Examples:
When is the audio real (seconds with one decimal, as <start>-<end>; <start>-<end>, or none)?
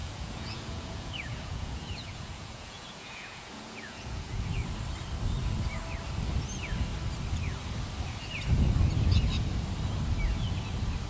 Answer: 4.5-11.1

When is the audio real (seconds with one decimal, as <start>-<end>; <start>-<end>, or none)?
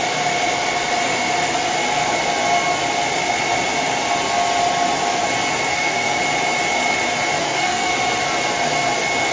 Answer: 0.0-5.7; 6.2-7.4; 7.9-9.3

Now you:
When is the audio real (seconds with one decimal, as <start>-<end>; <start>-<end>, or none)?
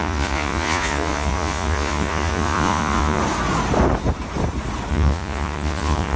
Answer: 3.2-4.9